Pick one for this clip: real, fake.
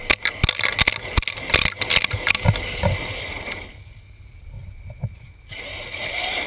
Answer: real